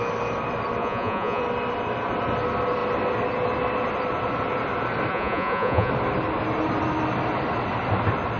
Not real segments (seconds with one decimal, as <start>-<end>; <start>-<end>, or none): 0.8-1.4; 5.1-5.9